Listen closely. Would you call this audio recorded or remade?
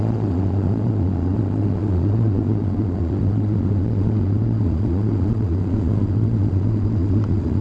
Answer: remade